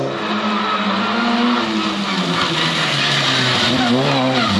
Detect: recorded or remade recorded